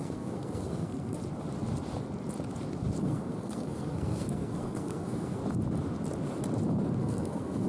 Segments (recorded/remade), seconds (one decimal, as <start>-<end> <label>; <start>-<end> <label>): 0.0-1.2 remade; 1.2-3.0 recorded; 3.0-5.4 remade; 5.4-7.0 recorded; 7.0-7.7 remade